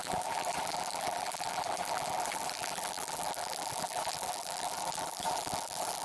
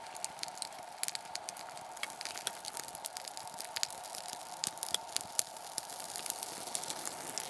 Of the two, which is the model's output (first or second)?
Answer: first